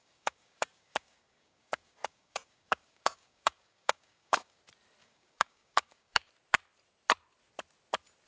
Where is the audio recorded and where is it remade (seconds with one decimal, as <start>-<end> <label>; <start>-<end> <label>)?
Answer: 0.0-4.6 remade; 4.6-5.0 recorded; 5.0-6.3 remade; 6.3-8.3 recorded